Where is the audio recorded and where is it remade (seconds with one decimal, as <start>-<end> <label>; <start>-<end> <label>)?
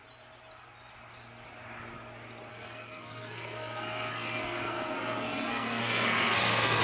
0.0-2.5 recorded; 2.5-6.8 remade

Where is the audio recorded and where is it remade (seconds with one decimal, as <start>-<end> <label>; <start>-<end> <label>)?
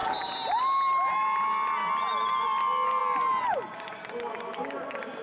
0.0-5.2 recorded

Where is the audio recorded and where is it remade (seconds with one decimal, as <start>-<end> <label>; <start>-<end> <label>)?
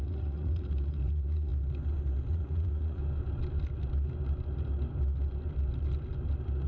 0.0-1.5 remade; 1.5-2.3 recorded; 2.3-3.0 remade; 3.0-6.7 recorded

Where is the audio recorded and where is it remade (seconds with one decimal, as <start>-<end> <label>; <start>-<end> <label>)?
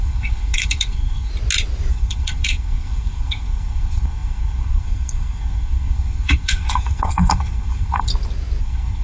0.0-1.3 remade; 1.3-1.9 recorded; 1.9-8.1 remade; 8.1-8.6 recorded; 8.6-9.0 remade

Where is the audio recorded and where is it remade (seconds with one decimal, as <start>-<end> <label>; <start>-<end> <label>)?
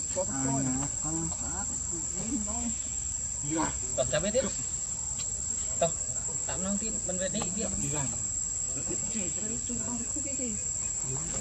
0.0-3.9 recorded; 3.9-5.8 remade; 5.8-11.4 recorded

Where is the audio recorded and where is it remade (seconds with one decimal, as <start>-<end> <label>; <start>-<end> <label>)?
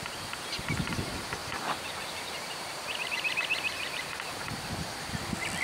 0.0-1.4 recorded; 1.4-4.8 remade; 4.8-5.6 recorded